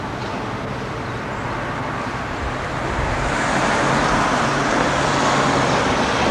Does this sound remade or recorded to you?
recorded